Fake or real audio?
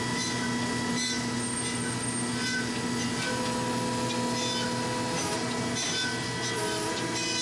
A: real